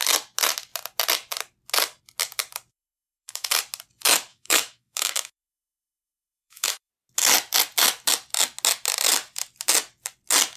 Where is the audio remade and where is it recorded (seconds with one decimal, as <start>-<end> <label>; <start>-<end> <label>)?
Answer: 0.0-2.7 recorded; 2.7-3.6 remade; 3.6-4.3 recorded; 4.3-6.9 remade; 6.9-10.6 recorded